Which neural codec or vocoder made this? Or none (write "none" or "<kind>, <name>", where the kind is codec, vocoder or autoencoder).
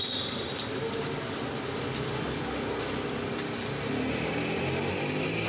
none